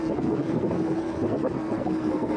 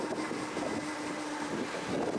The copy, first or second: first